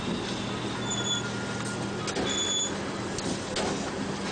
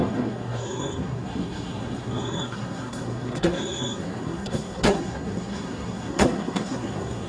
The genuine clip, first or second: first